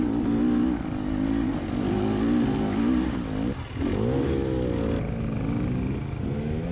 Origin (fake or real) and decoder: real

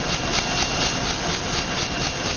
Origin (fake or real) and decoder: fake, vocoder, BigVGAN v2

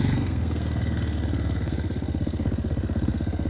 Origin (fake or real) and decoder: fake, codec, SNAC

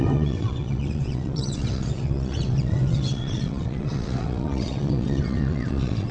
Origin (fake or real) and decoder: fake, vocoder, WaveNeXt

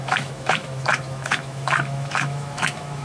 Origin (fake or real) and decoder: fake, autoencoder, DAC-VAE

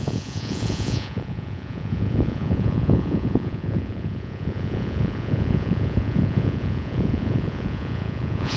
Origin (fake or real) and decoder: fake, vocoder, Vocos